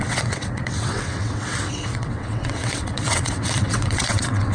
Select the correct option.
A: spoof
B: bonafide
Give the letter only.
A